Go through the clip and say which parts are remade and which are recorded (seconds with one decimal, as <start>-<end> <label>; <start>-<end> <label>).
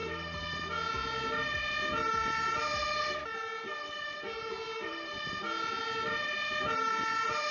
0.0-7.5 recorded